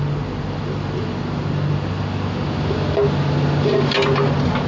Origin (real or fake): real